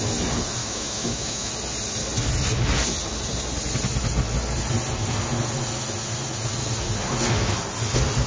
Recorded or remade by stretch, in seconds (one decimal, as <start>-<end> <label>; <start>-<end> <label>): 0.0-0.6 recorded; 0.6-1.5 remade; 1.5-8.3 recorded